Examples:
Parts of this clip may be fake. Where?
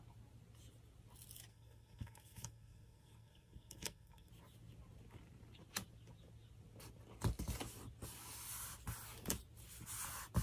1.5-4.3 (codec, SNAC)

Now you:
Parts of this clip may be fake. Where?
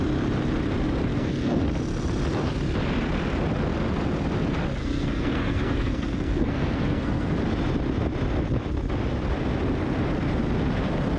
1.1-1.6 (codec, SNAC); 4.8-7.3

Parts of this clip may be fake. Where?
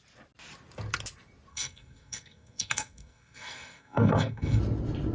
1.5-4.6 (codec, SNAC)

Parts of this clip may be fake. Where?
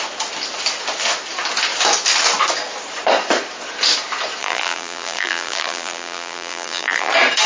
4.4-7.1 (vocoder, BigVGAN v2)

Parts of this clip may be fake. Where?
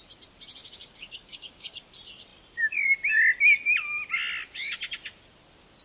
0.6-1.8 (codec, DAC)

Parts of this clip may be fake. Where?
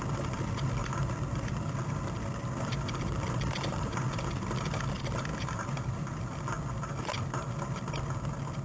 0.8-1.9 (vocoder, BigVGAN v2); 3.9-4.8; 5.3-6.9